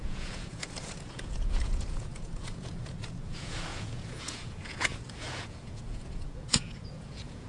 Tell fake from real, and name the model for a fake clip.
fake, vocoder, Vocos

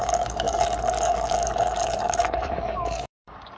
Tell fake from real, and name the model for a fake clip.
fake, codec, DAC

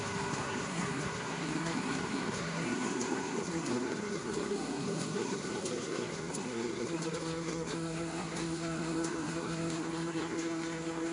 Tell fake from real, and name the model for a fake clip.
fake, codec, SNAC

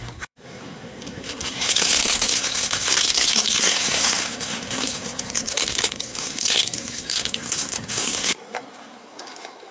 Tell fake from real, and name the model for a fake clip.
fake, codec, SNAC